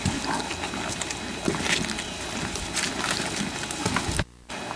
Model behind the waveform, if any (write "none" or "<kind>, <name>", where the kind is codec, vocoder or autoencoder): none